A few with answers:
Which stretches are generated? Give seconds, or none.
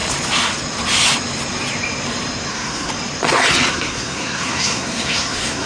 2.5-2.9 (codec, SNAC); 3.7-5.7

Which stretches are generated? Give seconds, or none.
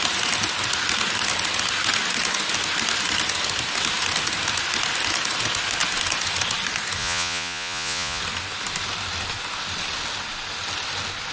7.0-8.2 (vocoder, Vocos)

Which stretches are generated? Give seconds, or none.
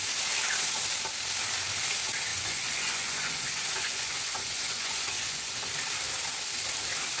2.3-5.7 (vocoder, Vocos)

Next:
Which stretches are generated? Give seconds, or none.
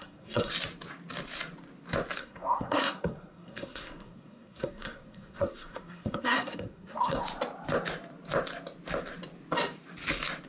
0.0-0.5 (codec, SNAC); 2.2-7.2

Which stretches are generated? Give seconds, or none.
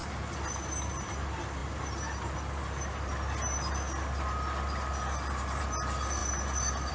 none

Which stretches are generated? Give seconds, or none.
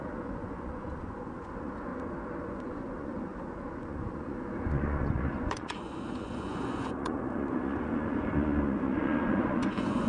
0.0-1.9 (vocoder, Vocos); 2.4-10.1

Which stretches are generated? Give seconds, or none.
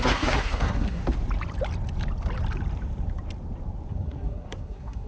0.0-1.0 (codec, SNAC); 3.9-5.1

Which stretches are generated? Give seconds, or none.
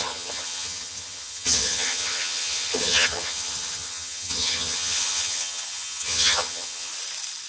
0.0-6.9 (vocoder, HiFi-GAN)